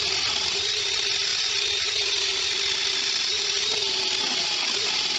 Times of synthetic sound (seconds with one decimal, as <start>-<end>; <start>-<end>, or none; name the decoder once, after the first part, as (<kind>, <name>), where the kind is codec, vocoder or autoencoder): none